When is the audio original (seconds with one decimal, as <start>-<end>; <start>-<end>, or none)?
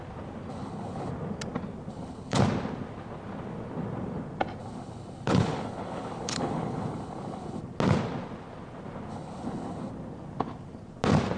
0.0-0.5; 1.1-1.9; 2.4-4.6; 7.6-9.1; 9.9-11.4